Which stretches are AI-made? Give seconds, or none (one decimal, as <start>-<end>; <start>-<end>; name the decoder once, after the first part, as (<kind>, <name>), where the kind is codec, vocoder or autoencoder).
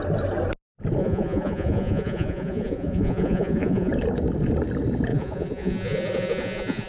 1.0-3.9 (vocoder, Vocos); 5.1-6.9